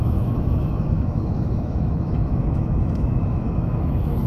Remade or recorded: remade